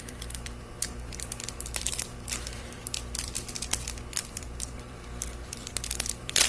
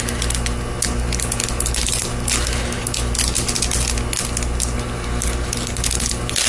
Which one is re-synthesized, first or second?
first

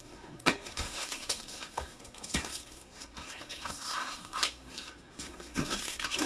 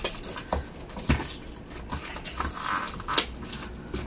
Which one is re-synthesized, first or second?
first